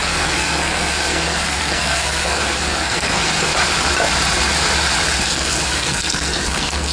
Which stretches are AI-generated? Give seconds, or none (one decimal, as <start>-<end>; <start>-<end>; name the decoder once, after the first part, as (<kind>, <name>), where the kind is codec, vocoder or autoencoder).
0.0-3.5 (codec, SNAC); 5.2-6.9